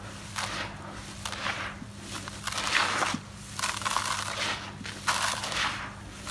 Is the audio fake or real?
real